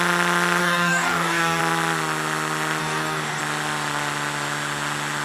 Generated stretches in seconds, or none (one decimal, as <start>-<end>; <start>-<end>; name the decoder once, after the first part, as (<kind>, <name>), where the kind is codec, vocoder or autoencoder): 0.6-1.6 (codec, DAC); 2.8-3.4